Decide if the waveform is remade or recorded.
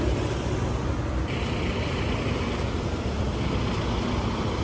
recorded